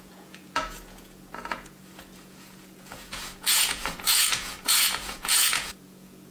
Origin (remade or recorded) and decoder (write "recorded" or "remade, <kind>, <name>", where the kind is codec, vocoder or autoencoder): remade, vocoder, Vocos